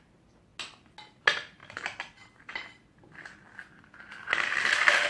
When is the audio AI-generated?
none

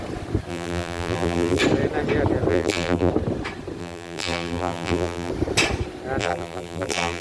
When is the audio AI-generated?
0.5-1.6 (vocoder, BigVGAN v2); 2.5-3.1; 3.8-5.3; 6.2-7.2

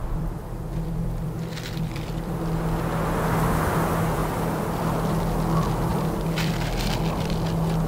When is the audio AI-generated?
0.0-2.4 (vocoder, BigVGAN v2); 4.2-5.2; 5.9-6.5